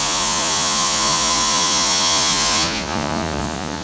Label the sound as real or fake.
fake